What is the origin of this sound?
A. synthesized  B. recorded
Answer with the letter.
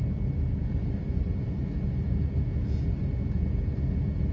B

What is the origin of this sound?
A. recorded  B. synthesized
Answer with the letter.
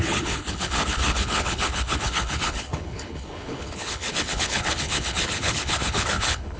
B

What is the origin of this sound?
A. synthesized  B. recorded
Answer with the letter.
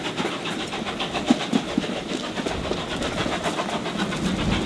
B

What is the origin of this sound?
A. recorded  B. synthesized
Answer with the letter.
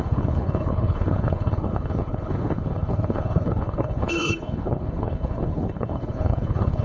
B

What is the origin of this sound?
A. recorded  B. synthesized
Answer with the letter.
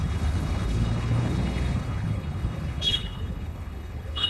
B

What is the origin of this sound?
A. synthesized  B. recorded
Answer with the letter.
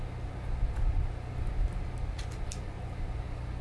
B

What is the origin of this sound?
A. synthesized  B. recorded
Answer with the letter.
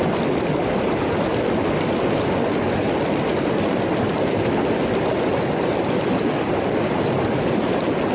B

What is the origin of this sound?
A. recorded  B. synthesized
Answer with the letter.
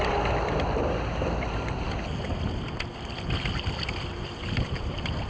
A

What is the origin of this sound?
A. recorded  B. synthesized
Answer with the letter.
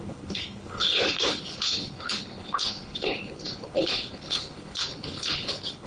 B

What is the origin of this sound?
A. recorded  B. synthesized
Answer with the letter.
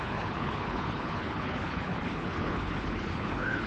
B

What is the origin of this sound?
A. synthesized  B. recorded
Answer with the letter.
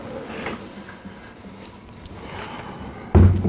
B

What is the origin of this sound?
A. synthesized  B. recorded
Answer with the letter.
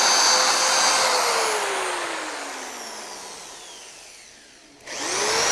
B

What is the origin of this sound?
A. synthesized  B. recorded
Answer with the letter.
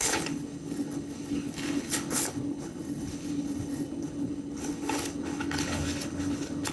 A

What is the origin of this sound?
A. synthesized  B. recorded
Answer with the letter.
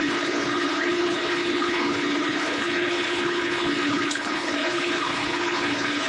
A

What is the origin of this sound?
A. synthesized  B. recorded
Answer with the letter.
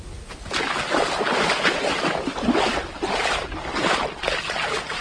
B